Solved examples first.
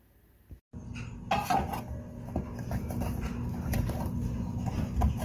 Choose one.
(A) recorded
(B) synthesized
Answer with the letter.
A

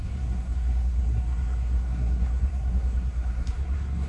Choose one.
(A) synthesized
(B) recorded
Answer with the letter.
A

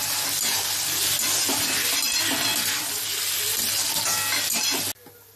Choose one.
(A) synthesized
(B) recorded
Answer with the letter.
B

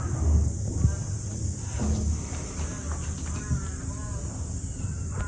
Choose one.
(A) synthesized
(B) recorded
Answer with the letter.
B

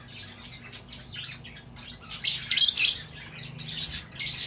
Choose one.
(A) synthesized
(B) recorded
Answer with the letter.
B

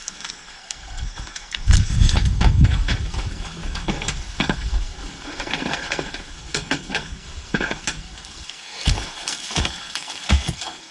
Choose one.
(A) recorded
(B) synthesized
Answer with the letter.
B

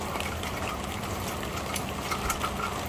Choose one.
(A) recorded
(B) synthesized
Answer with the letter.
A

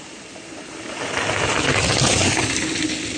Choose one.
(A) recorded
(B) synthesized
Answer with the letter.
A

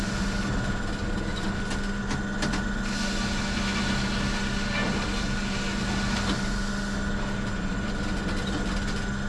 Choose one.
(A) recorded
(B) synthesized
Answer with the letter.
A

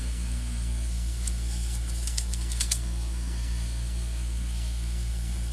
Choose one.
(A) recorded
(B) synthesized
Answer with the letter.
B